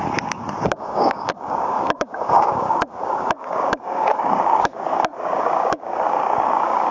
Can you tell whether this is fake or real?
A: fake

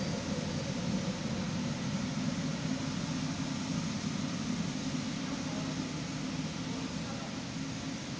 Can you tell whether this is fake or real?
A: real